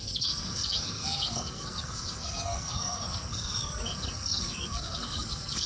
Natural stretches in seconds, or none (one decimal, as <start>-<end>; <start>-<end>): none